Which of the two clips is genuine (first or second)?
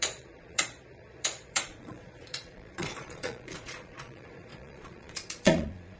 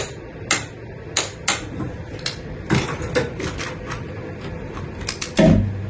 second